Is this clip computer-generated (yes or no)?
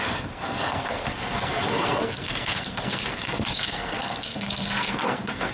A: yes